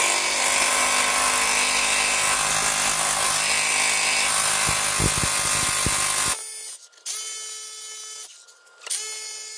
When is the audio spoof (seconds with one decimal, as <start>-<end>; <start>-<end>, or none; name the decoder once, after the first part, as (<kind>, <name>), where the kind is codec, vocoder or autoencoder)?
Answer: none